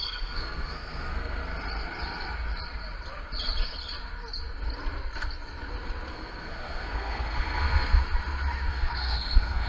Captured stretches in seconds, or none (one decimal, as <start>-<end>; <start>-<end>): 1.4-6.1; 8.0-8.7